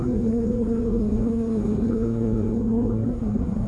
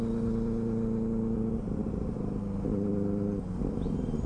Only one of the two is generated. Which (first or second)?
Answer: first